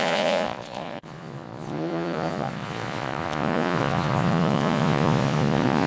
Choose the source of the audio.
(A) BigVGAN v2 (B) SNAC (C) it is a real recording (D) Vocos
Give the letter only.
D